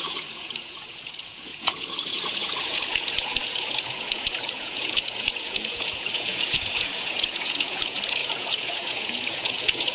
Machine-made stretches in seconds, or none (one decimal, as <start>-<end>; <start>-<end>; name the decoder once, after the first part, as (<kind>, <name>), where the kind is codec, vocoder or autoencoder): 0.0-9.9 (vocoder, Vocos)